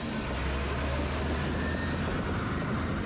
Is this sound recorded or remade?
recorded